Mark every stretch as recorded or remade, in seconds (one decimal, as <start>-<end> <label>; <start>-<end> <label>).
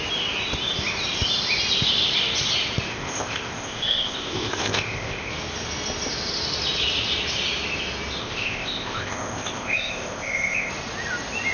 0.0-2.9 recorded; 2.9-5.3 remade; 5.3-8.2 recorded; 8.2-10.7 remade; 10.7-11.5 recorded